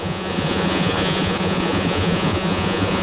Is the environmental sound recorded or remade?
remade